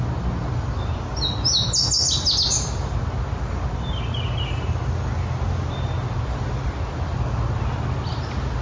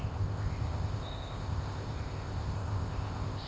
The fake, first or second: second